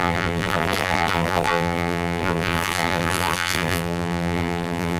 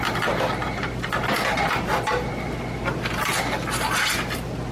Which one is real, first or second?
second